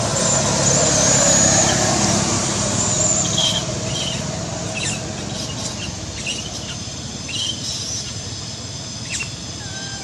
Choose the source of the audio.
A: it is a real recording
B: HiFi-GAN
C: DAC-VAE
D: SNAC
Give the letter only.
A